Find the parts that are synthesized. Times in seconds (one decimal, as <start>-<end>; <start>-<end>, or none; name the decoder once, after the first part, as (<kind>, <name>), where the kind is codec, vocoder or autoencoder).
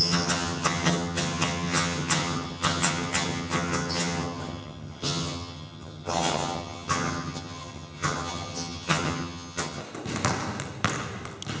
0.0-9.8 (vocoder, HiFi-GAN)